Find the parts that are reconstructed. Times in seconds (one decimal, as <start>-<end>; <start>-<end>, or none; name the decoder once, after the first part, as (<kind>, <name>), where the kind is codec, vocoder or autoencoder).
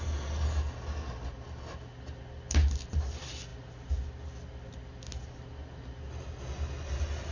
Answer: none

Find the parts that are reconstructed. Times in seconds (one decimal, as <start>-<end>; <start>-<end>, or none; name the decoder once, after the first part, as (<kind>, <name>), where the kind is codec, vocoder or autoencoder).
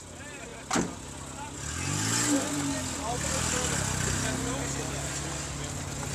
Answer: none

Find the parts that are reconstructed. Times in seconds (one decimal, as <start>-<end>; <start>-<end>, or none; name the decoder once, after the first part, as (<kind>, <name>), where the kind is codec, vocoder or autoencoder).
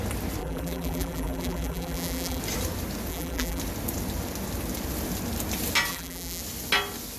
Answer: 0.4-2.4 (vocoder, BigVGAN v2); 3.1-3.6; 5.9-6.4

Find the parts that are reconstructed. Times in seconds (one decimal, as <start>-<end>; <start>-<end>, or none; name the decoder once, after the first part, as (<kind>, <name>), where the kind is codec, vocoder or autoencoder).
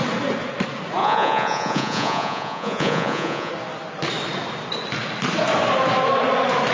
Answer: 1.0-3.5 (vocoder, Vocos)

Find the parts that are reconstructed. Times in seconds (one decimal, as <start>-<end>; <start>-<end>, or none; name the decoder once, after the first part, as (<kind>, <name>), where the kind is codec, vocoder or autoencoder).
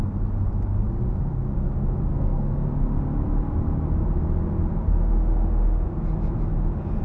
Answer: 2.1-2.7 (codec, SNAC)